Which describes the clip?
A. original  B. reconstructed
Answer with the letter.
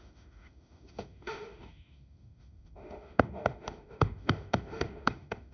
B